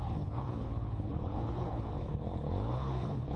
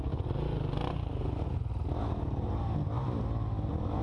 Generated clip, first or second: first